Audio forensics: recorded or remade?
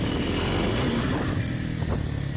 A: recorded